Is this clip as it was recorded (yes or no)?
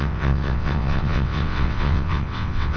no